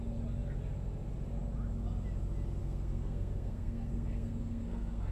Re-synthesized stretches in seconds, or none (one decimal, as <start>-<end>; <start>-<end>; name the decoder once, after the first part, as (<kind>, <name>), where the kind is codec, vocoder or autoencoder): 2.6-5.1 (codec, SNAC)